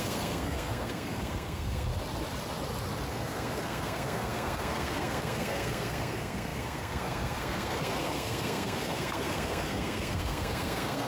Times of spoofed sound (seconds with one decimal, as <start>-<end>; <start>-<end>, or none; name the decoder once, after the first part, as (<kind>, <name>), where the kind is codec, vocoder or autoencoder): 0.0-1.9 (codec, SNAC); 3.1-11.1